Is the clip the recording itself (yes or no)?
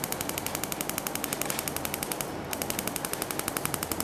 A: yes